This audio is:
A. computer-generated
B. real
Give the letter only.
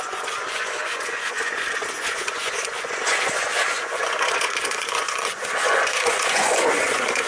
A